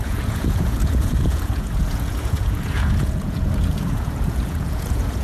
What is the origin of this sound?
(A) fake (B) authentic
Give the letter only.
A